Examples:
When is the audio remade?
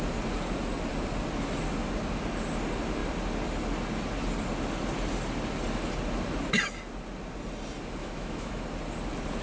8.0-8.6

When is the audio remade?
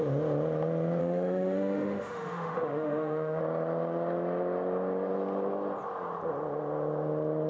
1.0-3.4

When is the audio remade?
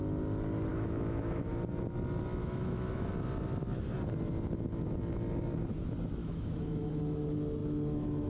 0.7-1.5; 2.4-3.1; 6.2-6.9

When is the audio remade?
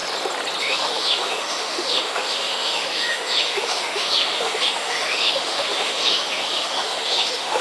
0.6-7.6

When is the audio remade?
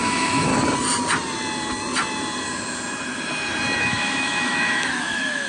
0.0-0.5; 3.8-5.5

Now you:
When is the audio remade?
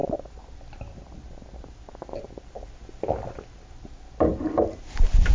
none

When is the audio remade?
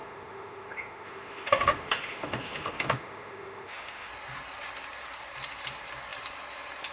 0.0-4.1